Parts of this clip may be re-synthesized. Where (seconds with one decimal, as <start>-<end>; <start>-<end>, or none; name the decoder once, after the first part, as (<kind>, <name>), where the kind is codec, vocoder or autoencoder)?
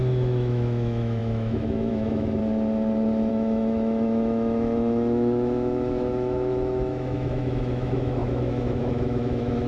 0.0-2.4 (autoencoder, DAC-VAE); 3.3-9.7